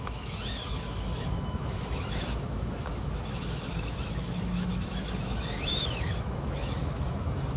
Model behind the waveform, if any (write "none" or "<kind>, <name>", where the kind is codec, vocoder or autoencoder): autoencoder, DAC-VAE